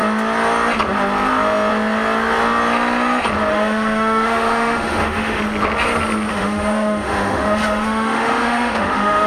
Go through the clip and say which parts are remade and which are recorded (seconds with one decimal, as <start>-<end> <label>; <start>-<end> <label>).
0.0-3.5 recorded; 3.5-5.4 remade; 5.4-6.3 recorded; 6.3-9.3 remade